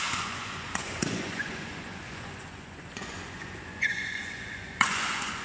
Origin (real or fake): fake